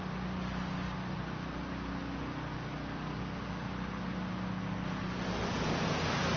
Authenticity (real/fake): real